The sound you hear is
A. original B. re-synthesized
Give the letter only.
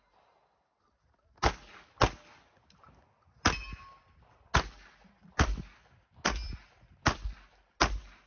A